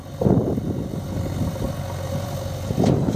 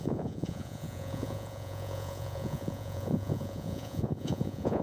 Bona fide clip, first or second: first